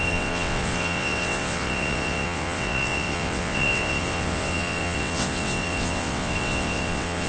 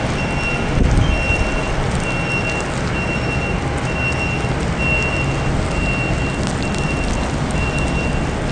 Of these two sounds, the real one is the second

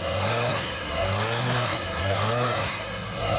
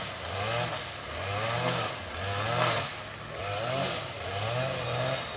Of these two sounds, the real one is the second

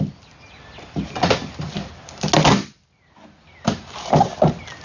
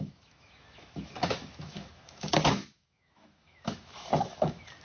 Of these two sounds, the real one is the first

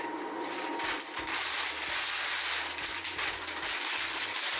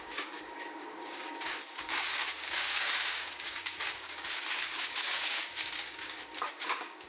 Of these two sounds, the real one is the first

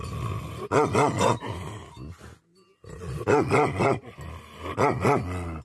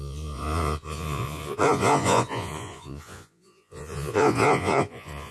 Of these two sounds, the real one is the first